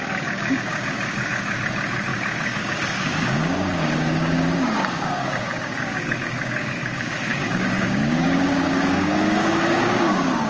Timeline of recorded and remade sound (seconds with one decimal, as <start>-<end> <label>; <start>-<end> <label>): 0.0-10.5 remade